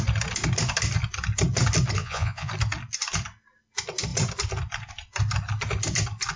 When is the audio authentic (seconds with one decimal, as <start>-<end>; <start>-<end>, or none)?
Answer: 0.0-2.0; 2.5-6.4

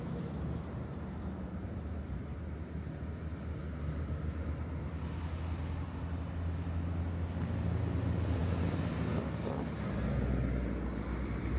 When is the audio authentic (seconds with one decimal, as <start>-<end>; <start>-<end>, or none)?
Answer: 0.0-11.6